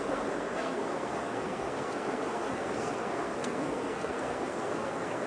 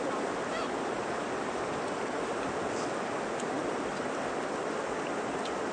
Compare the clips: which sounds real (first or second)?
second